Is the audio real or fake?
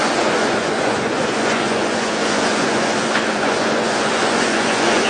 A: fake